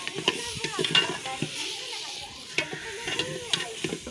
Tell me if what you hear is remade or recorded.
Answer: recorded